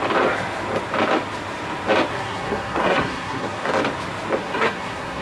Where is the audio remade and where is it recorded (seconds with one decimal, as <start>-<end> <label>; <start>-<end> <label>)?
0.0-2.1 recorded; 2.1-3.7 remade; 3.7-4.4 recorded; 4.4-5.2 remade